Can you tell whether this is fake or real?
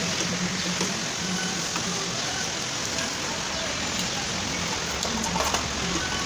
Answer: real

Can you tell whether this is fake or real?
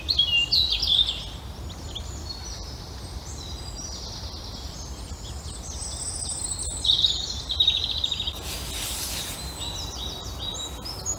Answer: real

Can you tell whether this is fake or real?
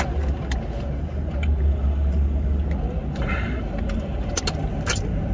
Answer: real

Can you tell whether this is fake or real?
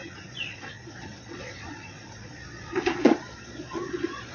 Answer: fake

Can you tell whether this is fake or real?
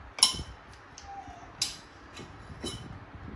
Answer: real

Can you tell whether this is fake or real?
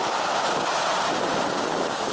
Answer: real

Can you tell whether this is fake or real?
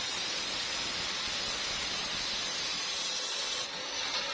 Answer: real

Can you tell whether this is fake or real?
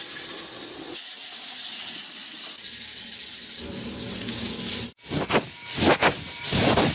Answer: real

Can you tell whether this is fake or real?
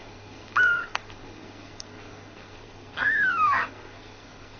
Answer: fake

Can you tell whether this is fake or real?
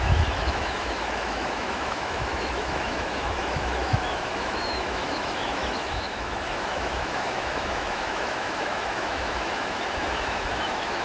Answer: fake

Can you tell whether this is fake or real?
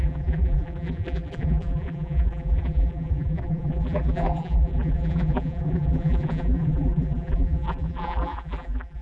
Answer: fake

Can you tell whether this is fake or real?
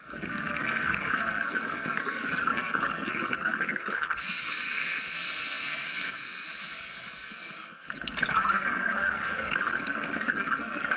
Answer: fake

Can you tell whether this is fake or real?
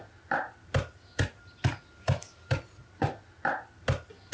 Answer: real